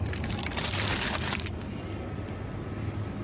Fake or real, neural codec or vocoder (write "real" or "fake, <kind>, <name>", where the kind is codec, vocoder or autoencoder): real